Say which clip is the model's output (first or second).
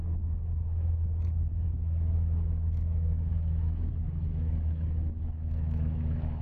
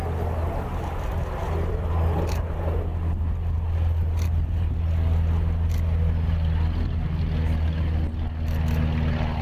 first